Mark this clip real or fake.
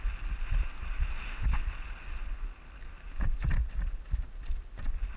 real